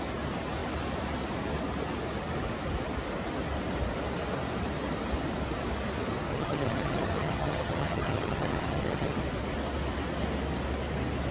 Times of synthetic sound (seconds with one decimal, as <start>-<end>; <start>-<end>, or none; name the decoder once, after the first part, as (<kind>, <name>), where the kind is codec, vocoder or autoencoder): 6.3-9.2 (vocoder, HiFi-GAN)